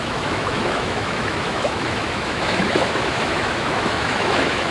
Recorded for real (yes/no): no